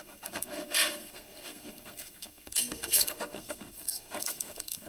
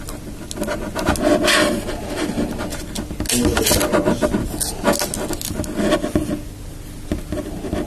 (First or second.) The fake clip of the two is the first